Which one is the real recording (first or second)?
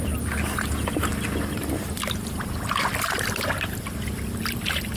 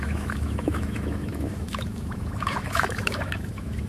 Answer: first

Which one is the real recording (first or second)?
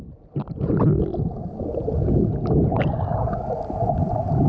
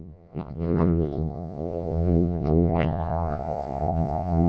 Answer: first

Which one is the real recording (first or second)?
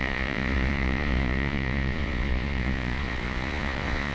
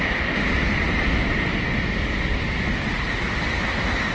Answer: second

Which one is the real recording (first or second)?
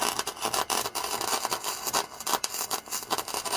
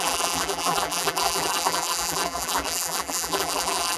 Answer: first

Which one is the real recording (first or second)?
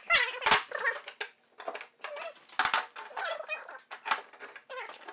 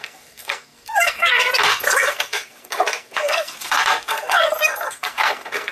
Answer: first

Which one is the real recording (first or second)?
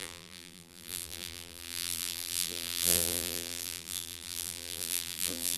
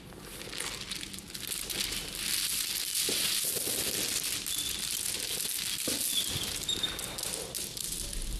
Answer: second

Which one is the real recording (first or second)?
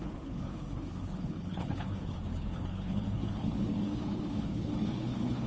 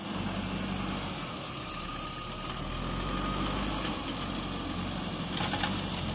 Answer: second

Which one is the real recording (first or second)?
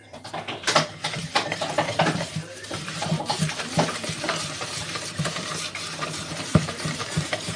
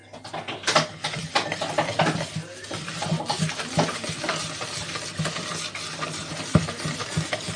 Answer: second